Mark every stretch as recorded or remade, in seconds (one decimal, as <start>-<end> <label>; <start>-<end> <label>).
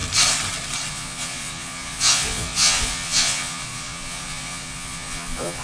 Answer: 0.0-0.9 recorded; 0.9-5.6 remade